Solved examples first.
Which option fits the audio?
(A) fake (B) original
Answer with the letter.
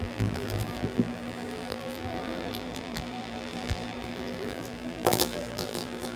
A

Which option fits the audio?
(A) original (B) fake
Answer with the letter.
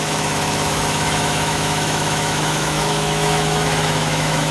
B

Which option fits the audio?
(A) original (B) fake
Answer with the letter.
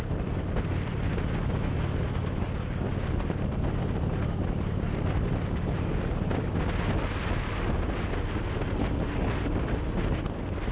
A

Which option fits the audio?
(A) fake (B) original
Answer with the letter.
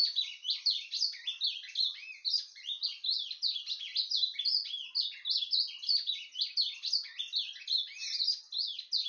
B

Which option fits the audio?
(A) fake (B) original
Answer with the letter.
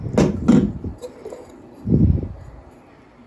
B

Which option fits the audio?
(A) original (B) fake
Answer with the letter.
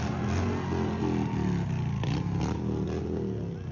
A